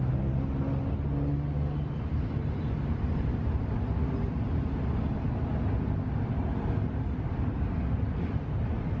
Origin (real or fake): real